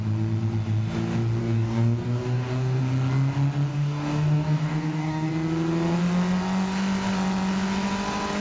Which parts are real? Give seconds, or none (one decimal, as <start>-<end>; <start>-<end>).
0.0-1.4; 2.8-3.7; 5.3-8.4

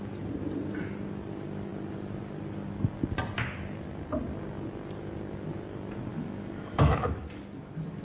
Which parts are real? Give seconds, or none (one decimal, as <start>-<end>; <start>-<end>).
0.0-6.1; 7.2-8.0

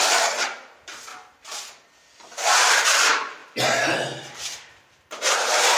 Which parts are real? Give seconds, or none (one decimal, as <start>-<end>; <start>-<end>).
1.1-2.7

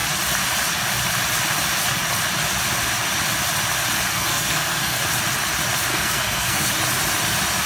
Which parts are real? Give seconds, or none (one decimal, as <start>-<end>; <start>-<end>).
0.0-4.1; 5.0-5.9; 6.7-7.7

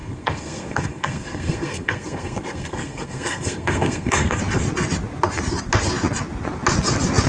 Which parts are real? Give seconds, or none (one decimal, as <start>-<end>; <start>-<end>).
4.4-7.3

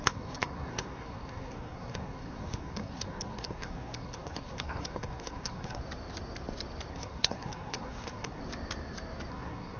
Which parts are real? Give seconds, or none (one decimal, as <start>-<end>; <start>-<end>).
5.8-6.9; 8.4-9.3

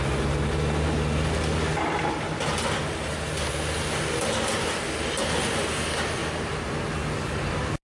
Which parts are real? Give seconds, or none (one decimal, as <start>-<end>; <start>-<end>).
0.0-7.9

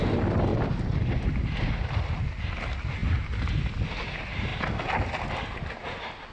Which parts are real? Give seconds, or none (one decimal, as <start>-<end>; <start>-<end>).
0.0-0.5; 2.2-6.3